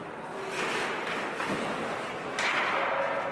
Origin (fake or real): real